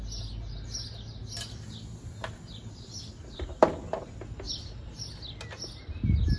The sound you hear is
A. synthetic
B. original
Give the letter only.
B